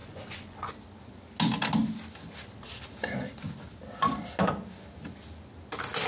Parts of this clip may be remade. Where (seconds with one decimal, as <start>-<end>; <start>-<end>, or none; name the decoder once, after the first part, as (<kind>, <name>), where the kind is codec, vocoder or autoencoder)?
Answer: 0.0-0.7 (vocoder, Vocos)